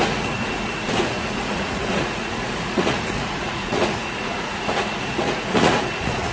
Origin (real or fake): fake